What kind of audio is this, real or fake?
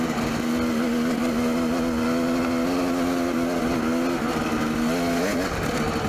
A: real